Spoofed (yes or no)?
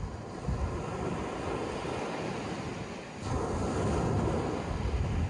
no